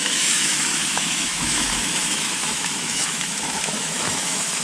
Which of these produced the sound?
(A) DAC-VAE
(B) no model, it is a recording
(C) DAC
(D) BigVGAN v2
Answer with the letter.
A